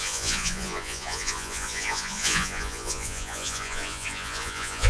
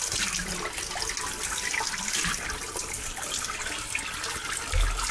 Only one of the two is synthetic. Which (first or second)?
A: first